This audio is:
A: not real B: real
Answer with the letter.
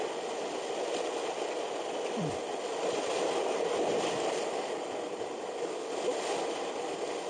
B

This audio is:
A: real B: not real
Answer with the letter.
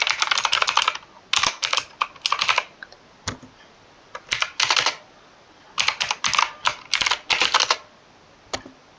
A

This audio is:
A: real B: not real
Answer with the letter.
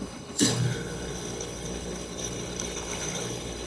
B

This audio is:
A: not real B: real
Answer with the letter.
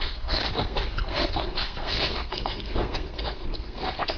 A